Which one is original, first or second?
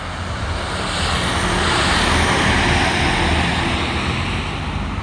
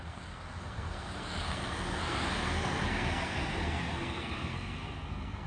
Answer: first